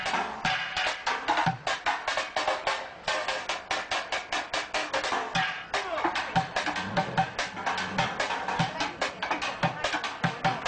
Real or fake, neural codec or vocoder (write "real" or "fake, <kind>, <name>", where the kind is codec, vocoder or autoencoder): real